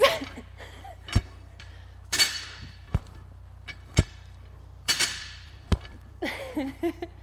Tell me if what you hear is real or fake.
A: fake